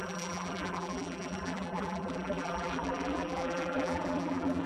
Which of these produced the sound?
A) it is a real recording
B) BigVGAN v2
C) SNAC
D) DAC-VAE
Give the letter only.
B